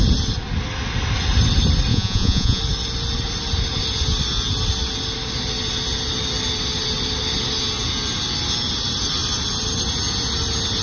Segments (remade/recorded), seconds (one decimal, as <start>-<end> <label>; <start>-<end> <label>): 0.0-1.9 recorded; 1.9-2.6 remade; 2.6-10.8 recorded